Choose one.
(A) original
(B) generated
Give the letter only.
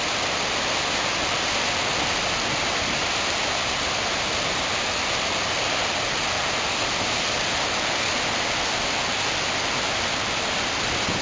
A